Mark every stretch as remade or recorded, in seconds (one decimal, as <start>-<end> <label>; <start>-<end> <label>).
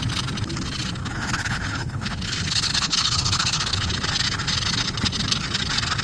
0.0-1.0 recorded; 1.0-3.9 remade; 3.9-6.0 recorded